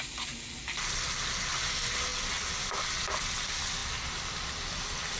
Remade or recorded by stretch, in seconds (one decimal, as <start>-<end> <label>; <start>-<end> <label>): 0.0-5.2 recorded